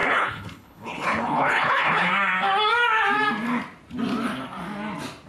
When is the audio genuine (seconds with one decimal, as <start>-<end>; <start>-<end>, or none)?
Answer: 2.1-5.3